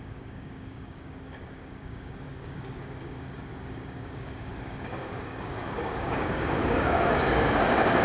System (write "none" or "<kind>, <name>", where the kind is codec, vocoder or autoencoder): codec, DAC